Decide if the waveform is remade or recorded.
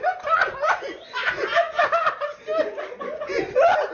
recorded